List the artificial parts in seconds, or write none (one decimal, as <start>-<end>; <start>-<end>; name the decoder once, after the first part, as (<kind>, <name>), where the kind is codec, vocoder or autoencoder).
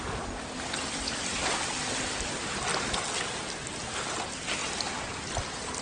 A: none